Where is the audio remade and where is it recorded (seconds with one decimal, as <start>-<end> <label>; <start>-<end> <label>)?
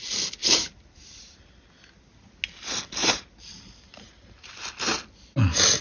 0.0-0.4 recorded; 0.4-1.6 remade; 1.6-3.0 recorded; 3.0-4.5 remade; 4.5-5.8 recorded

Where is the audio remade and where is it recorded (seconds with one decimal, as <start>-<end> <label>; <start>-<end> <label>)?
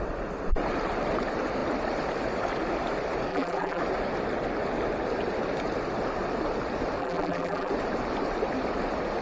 0.0-3.3 recorded; 3.3-3.8 remade; 3.8-7.0 recorded; 7.0-7.7 remade; 7.7-9.2 recorded